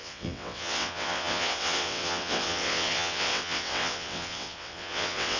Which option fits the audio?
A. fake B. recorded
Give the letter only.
A